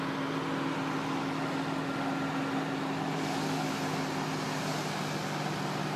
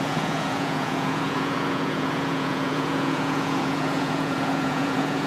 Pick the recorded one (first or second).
first